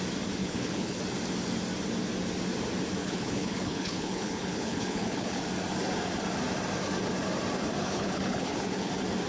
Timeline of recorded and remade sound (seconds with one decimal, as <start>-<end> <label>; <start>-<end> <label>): 0.0-0.4 recorded; 0.4-1.0 remade; 1.0-3.0 recorded; 3.0-5.4 remade; 5.4-7.8 recorded; 7.8-8.9 remade; 8.9-9.3 recorded